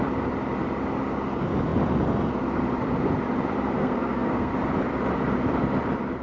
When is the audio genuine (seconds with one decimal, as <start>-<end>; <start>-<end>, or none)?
0.0-3.8; 4.5-6.2